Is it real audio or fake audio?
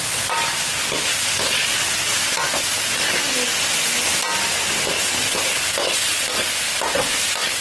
real